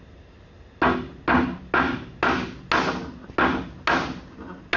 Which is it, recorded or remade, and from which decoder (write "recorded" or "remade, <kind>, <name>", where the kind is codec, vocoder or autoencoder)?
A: recorded